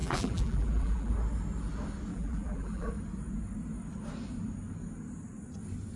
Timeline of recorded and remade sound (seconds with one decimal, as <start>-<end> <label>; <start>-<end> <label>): 0.0-1.1 remade; 1.1-2.1 recorded; 2.1-2.9 remade; 2.9-6.0 recorded